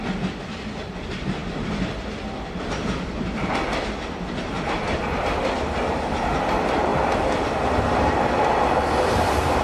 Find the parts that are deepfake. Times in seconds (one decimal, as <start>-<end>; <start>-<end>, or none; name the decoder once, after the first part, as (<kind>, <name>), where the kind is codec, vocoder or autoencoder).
none

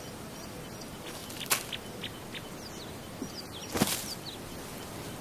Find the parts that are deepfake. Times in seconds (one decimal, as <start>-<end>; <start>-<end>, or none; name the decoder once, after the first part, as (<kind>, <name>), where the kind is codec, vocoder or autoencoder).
none